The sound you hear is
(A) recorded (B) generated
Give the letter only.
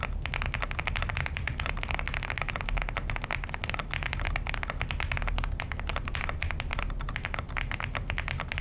A